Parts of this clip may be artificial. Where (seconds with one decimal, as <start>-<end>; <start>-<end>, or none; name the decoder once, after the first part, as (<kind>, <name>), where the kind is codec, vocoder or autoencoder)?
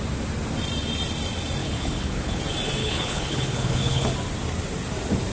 1.6-2.4 (codec, HILCodec); 2.8-4.1